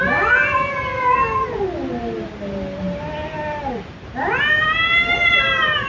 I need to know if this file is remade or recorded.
recorded